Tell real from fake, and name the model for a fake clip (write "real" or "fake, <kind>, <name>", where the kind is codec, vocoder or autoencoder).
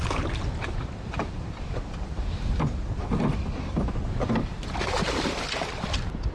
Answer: real